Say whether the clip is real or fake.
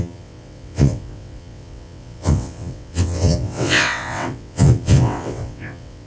fake